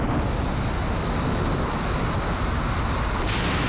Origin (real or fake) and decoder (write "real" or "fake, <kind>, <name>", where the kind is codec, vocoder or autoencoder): real